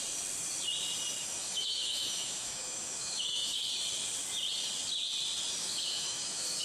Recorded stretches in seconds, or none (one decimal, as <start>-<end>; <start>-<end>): 0.0-1.2; 3.6-5.6